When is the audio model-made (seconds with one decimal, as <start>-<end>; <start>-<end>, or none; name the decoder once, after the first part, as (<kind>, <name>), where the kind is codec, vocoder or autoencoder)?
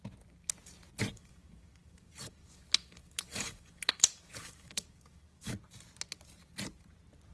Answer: 1.1-5.5 (codec, DAC)